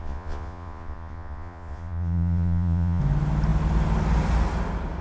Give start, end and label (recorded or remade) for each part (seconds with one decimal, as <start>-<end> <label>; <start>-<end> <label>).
0.0-3.0 remade; 3.0-5.0 recorded

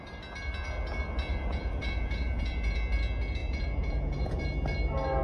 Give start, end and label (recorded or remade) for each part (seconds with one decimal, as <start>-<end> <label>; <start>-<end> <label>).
0.0-1.3 recorded; 1.3-2.8 remade; 2.8-3.4 recorded; 3.4-4.4 remade; 4.4-5.2 recorded

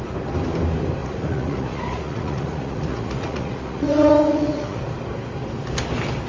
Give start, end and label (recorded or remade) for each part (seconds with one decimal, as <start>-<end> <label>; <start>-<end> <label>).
0.0-1.0 recorded; 1.0-4.8 remade; 4.8-6.3 recorded

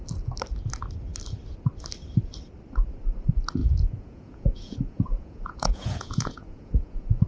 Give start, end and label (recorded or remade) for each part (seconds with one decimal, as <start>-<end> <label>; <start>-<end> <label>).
0.0-3.6 recorded; 3.6-7.3 remade